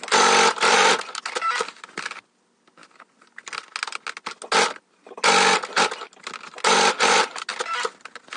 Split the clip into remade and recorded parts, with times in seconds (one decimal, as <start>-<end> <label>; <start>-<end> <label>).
0.0-8.4 recorded